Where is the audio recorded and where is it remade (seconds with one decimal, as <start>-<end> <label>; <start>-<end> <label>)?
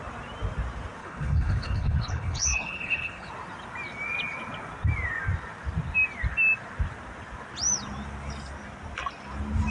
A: 0.0-1.0 recorded; 1.0-3.3 remade; 3.3-9.7 recorded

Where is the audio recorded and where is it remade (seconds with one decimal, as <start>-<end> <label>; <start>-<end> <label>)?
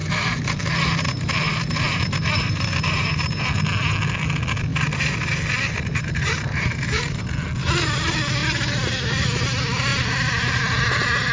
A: 0.0-3.4 remade; 3.4-4.7 recorded; 4.7-7.2 remade; 7.2-9.9 recorded; 9.9-10.6 remade; 10.6-11.3 recorded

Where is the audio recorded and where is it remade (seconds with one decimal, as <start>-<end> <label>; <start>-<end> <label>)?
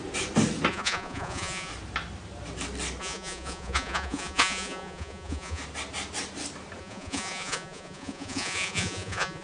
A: 0.0-0.7 recorded; 0.7-1.7 remade; 1.7-3.0 recorded; 3.0-5.6 remade; 5.6-6.8 recorded; 6.8-9.4 remade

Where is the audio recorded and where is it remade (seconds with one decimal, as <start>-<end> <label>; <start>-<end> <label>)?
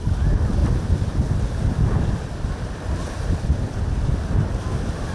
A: 0.0-0.6 recorded; 0.6-3.7 remade; 3.7-5.1 recorded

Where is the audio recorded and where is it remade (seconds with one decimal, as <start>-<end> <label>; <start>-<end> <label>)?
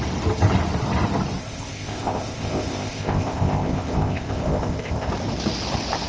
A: 0.0-1.4 recorded; 1.4-5.1 remade; 5.1-6.1 recorded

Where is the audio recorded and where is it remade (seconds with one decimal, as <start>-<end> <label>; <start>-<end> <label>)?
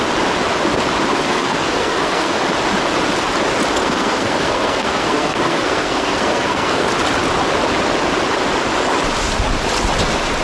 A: 0.0-1.1 recorded; 1.1-2.4 remade; 2.4-3.8 recorded; 3.8-6.9 remade; 6.9-10.4 recorded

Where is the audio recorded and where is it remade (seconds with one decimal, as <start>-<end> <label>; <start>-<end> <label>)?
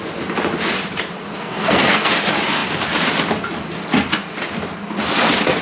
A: 0.0-1.3 recorded; 1.3-2.1 remade; 2.1-5.6 recorded